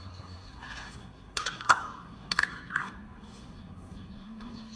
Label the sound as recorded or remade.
remade